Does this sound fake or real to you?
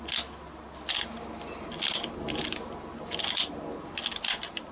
real